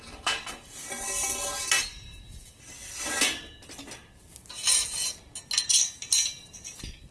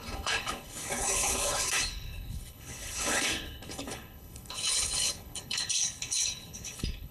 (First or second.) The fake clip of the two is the second